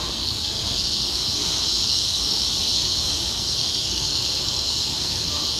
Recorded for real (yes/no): no